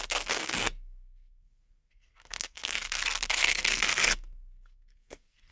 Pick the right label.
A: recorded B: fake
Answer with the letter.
B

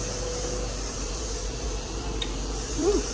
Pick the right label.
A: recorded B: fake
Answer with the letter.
B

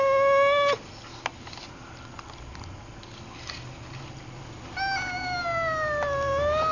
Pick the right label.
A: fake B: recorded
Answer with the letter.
B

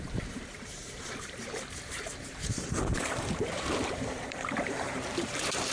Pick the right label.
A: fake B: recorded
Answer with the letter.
A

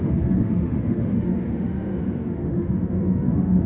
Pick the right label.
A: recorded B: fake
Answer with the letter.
B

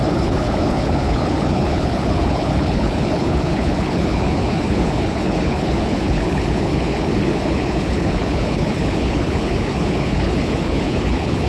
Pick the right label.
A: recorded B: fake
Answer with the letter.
B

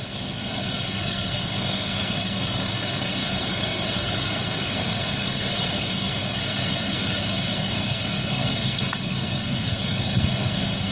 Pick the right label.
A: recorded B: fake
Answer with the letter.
B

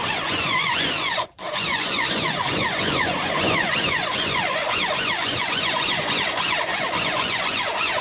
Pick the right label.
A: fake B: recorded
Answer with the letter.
A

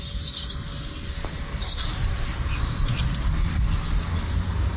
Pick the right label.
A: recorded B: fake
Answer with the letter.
A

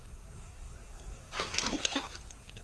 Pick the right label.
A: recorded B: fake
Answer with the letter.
B